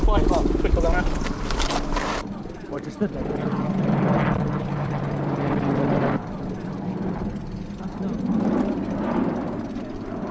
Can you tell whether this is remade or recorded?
recorded